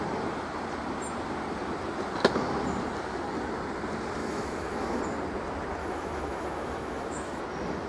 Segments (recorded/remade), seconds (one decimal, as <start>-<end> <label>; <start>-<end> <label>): 0.0-4.2 recorded; 4.2-5.0 remade; 5.0-5.8 recorded; 5.8-7.4 remade; 7.4-7.9 recorded